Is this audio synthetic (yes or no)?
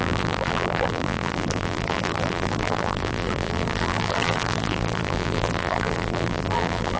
yes